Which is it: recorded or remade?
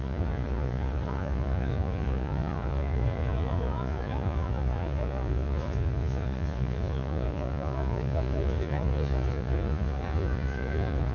remade